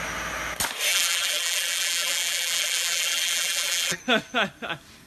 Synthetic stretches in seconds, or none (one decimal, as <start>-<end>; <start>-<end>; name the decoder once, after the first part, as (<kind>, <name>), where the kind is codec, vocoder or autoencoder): 0.9-4.0 (vocoder, BigVGAN v2)